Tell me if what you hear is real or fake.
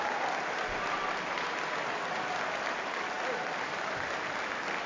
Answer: real